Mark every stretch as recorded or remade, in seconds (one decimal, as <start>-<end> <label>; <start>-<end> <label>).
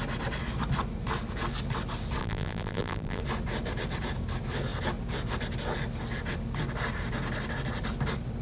0.0-2.2 recorded; 2.2-3.2 remade; 3.2-8.4 recorded